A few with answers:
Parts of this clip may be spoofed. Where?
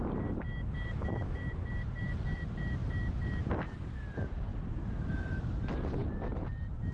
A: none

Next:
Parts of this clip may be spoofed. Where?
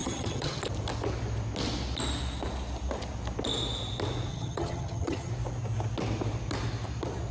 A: 0.0-0.6 (vocoder, HiFi-GAN); 4.3-5.3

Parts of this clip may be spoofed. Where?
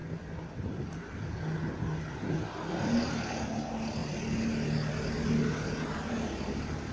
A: none